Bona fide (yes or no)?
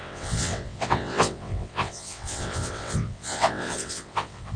no